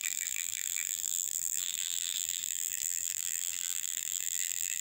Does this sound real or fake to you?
fake